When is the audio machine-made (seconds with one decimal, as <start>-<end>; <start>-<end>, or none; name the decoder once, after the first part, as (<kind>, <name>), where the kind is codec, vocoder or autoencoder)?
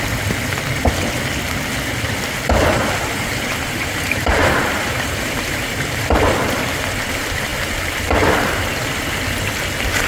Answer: 2.7-5.6 (vocoder, BigVGAN v2)